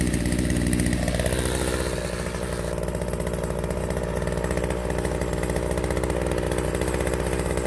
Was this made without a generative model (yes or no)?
yes